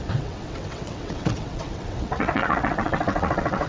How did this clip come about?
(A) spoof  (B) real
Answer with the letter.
A